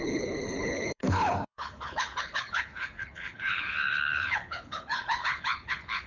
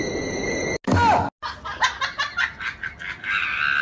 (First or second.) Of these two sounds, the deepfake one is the first